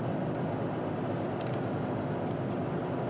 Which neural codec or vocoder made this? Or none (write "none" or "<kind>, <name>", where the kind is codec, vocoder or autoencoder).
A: none